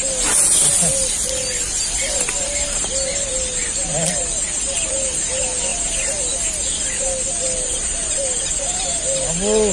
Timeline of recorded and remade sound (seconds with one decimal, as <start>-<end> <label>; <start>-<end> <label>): 0.0-9.7 recorded